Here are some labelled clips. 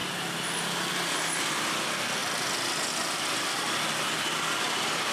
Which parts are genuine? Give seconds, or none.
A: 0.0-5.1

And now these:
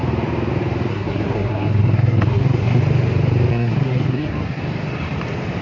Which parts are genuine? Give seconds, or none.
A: 0.0-0.9; 2.8-3.5; 4.6-5.6

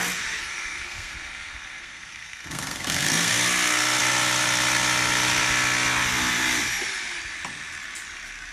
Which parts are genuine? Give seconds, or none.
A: 0.0-0.4; 3.3-8.5